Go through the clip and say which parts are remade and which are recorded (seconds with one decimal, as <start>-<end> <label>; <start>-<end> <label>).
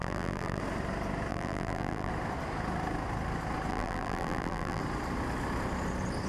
0.0-0.6 remade; 0.6-1.3 recorded; 1.3-2.1 remade; 2.1-3.7 recorded; 3.7-4.8 remade; 4.8-6.3 recorded